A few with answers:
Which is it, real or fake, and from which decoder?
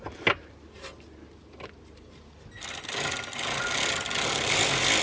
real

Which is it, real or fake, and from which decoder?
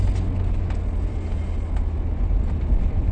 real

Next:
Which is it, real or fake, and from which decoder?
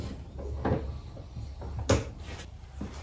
real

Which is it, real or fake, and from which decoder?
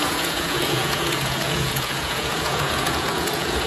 fake, vocoder, Vocos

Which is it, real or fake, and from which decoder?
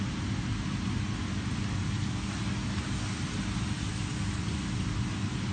real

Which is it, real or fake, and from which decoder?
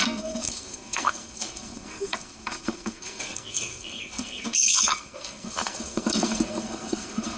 fake, codec, SNAC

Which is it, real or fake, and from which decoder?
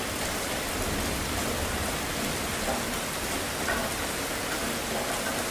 real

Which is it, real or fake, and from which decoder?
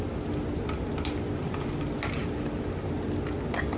real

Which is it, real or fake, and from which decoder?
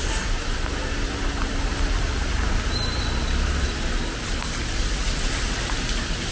real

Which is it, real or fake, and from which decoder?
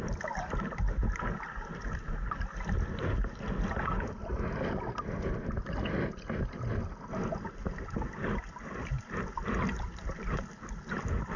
real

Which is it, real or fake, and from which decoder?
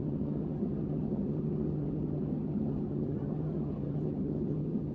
fake, vocoder, HiFi-GAN